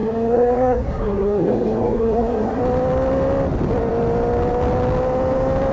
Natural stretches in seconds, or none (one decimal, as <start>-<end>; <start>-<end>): 2.6-5.7